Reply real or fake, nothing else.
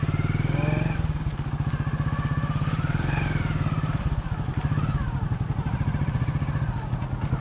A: real